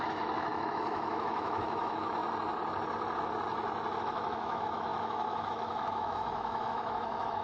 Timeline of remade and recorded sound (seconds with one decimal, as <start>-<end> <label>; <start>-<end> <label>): 0.0-2.2 remade; 2.2-4.0 recorded; 4.0-7.4 remade